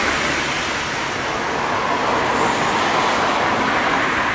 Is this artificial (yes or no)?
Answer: no